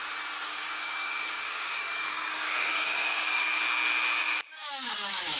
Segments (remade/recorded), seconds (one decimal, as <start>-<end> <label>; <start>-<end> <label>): 0.0-0.4 recorded; 0.4-3.6 remade; 3.6-4.2 recorded; 4.2-5.4 remade